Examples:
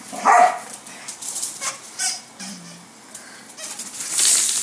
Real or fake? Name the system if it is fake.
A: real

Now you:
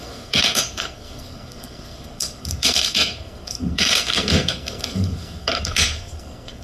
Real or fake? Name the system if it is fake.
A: fake, codec, SNAC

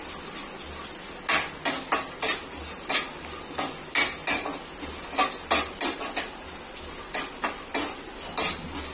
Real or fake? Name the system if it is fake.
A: real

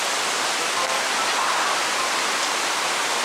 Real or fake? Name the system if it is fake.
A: real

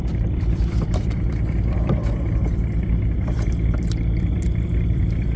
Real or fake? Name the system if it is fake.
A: fake, vocoder, BigVGAN v2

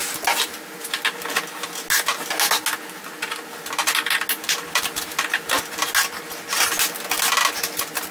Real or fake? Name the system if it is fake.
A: real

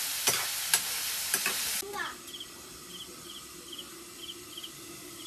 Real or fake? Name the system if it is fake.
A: real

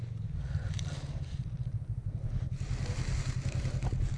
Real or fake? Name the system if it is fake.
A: real